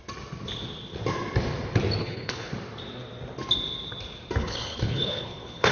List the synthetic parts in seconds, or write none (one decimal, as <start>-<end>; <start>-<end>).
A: 2.0-2.5; 4.4-5.7